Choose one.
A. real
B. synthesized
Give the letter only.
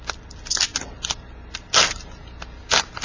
A